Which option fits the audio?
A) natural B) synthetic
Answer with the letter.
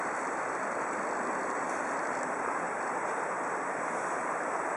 B